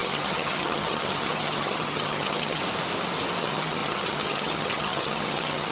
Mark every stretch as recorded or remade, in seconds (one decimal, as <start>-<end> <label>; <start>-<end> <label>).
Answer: 0.0-2.6 remade; 2.6-3.4 recorded; 3.4-5.7 remade